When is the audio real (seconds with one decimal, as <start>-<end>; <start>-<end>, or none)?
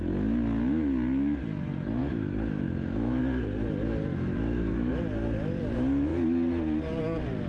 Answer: 0.0-2.0; 3.2-4.1; 4.9-7.5